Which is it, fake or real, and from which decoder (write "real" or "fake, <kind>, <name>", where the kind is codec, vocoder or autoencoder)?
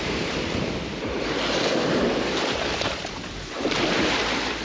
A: fake, vocoder, BigVGAN v2